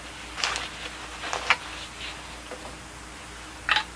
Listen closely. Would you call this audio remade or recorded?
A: recorded